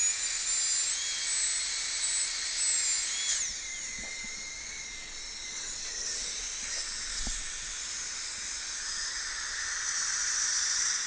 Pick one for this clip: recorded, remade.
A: recorded